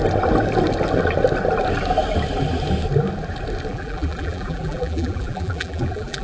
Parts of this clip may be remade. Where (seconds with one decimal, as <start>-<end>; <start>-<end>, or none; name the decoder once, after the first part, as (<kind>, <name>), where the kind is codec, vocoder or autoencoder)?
3.7-6.2 (vocoder, BigVGAN v2)